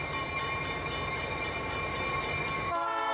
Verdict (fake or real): fake